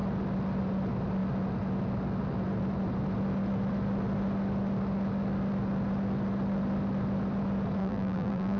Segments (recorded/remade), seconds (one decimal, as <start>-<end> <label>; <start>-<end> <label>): 0.0-7.8 recorded; 7.8-8.6 remade